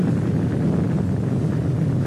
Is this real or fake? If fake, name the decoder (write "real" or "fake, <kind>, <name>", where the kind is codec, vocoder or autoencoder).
real